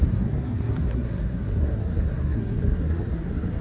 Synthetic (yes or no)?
yes